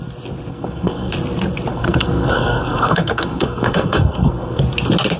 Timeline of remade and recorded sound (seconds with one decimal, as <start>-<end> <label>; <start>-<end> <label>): 0.0-0.5 recorded; 0.5-1.1 remade; 1.1-1.7 recorded; 1.7-4.6 remade; 4.6-5.2 recorded